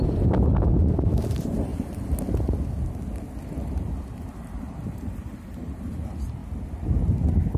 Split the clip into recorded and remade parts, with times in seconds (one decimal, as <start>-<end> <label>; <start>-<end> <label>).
0.0-1.7 remade; 1.7-3.7 recorded; 3.7-6.4 remade; 6.4-7.6 recorded